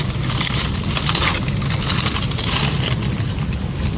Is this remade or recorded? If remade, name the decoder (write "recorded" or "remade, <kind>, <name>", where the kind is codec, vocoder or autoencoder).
recorded